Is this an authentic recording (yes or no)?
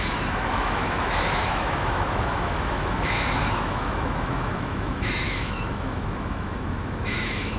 no